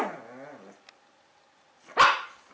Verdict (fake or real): real